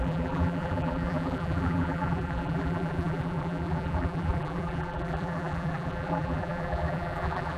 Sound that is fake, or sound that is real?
fake